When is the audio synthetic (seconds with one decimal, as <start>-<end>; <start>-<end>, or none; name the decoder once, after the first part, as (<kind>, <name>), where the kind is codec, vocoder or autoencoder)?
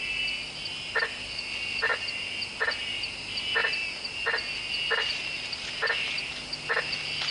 none